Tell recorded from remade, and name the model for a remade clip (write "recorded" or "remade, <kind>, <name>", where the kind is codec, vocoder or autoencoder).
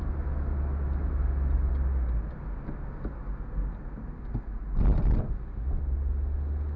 recorded